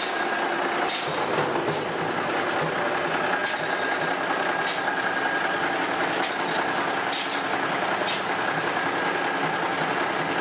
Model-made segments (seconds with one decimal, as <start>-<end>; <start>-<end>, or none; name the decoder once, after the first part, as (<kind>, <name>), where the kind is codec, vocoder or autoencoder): none